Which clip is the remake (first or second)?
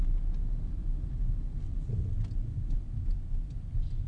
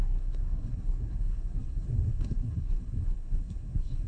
second